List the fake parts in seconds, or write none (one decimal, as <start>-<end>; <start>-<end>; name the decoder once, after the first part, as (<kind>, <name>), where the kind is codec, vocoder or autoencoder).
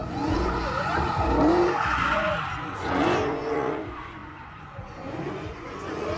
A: 0.0-6.2 (vocoder, Vocos)